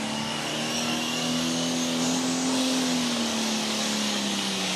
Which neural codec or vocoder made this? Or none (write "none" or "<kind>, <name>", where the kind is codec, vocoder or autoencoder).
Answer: codec, DAC